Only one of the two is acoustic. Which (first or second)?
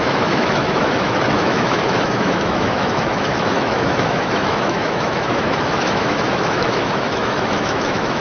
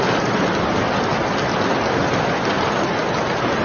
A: second